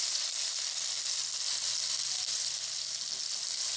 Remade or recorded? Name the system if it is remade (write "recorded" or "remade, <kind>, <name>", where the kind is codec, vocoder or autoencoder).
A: recorded